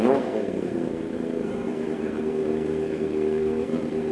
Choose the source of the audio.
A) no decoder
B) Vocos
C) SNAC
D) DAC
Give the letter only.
C